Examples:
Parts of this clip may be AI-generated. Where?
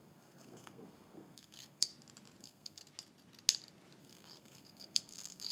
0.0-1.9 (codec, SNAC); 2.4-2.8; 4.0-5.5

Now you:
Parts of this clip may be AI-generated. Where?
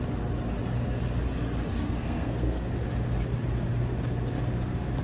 1.7-2.7 (codec, SNAC)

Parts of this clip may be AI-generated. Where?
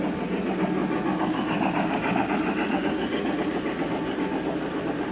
none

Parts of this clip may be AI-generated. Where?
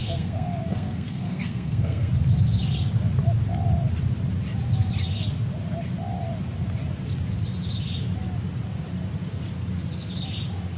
0.0-2.1 (codec, SNAC)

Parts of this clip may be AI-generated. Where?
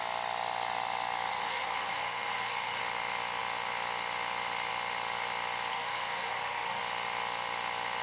1.3-2.8 (codec, SNAC); 5.7-6.8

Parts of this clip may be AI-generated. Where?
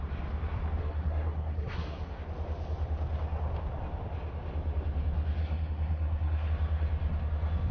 0.8-2.2 (codec, SNAC); 5.4-6.5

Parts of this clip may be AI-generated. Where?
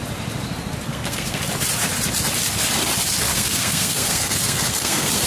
0.9-1.4 (codec, SNAC); 3.3-5.3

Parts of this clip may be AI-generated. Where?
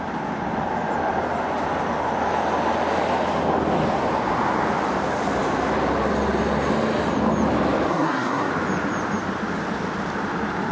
7.9-8.5 (codec, SNAC)